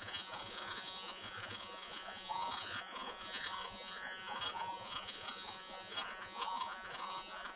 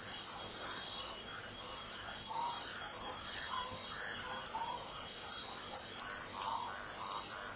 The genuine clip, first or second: second